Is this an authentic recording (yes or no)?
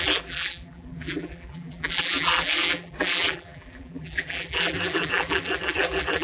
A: no